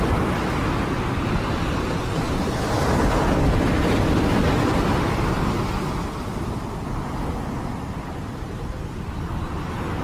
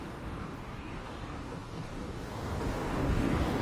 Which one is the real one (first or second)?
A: first